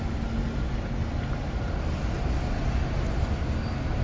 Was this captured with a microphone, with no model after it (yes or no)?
yes